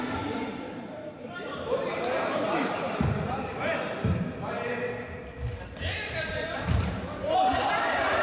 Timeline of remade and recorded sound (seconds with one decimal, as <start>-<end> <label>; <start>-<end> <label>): 0.0-3.7 remade; 3.7-6.3 recorded; 6.3-8.2 remade